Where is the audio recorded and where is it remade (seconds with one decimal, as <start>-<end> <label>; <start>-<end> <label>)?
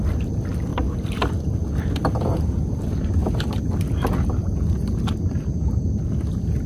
0.0-0.7 recorded; 0.7-1.2 remade; 1.2-6.7 recorded